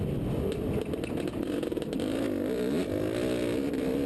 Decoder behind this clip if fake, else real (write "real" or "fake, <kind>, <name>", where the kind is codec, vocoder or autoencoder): real